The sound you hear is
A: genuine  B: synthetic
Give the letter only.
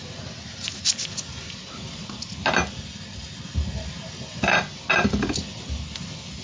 A